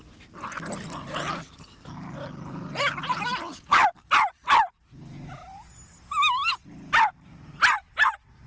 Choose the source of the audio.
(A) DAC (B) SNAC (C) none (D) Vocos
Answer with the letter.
C